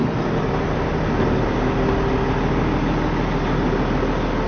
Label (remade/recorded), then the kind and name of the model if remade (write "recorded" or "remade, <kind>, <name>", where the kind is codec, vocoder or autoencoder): recorded